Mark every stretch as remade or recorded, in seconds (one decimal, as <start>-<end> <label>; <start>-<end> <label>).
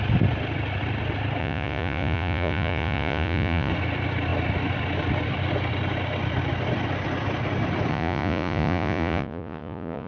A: 0.0-1.4 recorded; 1.4-3.7 remade; 3.7-7.9 recorded; 7.9-10.1 remade